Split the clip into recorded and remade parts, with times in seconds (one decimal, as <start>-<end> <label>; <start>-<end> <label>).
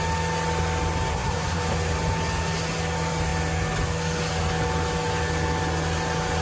0.0-1.1 recorded; 1.1-1.6 remade; 1.6-6.4 recorded